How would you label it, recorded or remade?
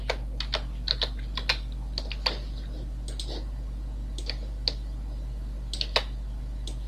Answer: recorded